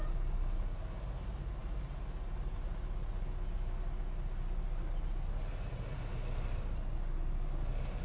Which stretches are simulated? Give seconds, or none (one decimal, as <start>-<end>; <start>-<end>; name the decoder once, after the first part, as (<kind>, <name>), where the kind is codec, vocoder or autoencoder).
none